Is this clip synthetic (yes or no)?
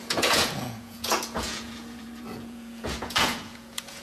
yes